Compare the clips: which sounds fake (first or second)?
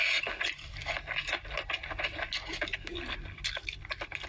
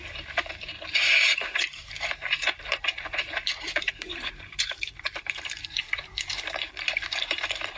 second